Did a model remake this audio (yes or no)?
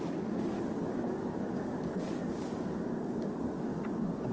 yes